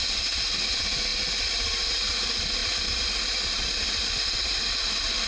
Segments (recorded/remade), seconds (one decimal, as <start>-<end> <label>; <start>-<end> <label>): 0.0-5.3 recorded